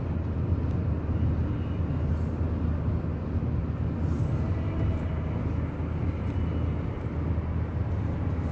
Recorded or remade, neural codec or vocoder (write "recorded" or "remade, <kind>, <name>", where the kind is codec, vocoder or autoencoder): recorded